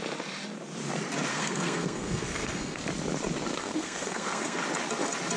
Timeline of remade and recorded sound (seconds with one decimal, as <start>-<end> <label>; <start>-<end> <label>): 0.0-1.3 recorded; 1.3-2.8 remade; 2.8-3.6 recorded; 3.6-4.6 remade; 4.6-5.4 recorded